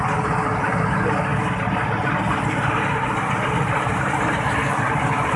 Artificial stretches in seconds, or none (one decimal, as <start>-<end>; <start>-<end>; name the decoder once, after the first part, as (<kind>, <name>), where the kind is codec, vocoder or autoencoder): none